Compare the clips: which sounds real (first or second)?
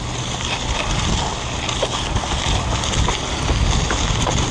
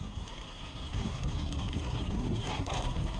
first